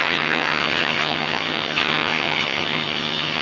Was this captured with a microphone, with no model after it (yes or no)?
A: no